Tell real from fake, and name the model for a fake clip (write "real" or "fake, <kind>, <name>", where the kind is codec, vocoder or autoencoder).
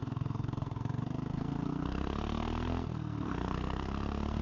fake, codec, SNAC